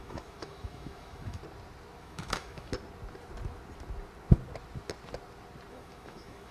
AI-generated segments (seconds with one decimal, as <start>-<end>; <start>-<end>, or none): 0.0-1.4; 2.0-2.7; 5.7-6.5